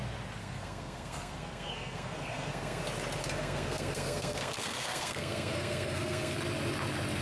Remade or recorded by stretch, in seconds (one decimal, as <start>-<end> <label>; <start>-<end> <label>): 0.0-0.4 recorded; 0.4-2.8 remade; 2.8-3.2 recorded; 3.2-6.4 remade; 6.4-7.2 recorded